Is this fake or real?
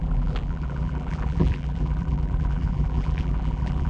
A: fake